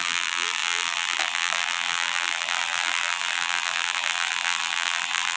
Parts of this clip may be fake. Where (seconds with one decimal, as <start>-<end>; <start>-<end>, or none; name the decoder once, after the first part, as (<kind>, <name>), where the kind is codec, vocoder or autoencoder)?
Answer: 0.0-5.4 (vocoder, BigVGAN v2)